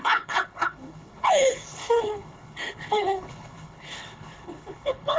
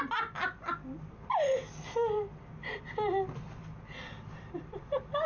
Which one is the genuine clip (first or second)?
second